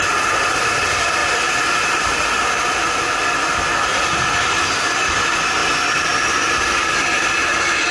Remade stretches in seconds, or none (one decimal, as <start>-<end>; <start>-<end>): none